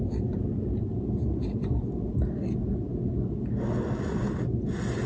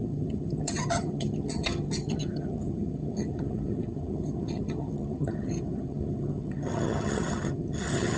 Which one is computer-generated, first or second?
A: second